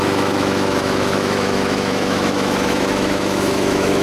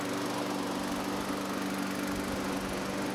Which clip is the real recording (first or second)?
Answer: second